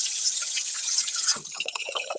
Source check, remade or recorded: remade